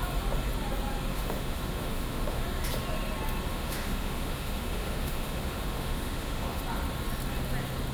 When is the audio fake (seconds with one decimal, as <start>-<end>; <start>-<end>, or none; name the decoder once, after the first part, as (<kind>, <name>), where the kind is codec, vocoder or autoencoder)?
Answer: 1.1-2.4 (autoencoder, DAC-VAE); 3.5-6.6